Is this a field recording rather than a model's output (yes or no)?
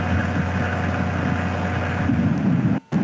yes